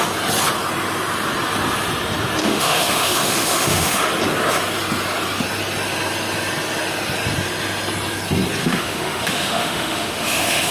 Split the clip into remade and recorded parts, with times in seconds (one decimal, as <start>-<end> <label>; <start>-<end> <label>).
0.0-2.4 recorded; 2.4-4.1 remade; 4.1-8.6 recorded; 8.6-10.7 remade